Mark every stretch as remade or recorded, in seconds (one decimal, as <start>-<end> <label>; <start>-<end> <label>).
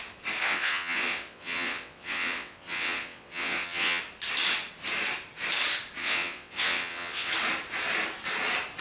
0.0-0.4 recorded; 0.4-4.0 remade; 4.0-6.0 recorded; 6.0-7.3 remade; 7.3-8.8 recorded